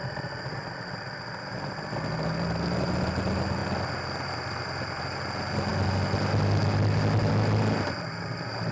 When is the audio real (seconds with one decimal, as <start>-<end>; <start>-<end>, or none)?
0.0-8.7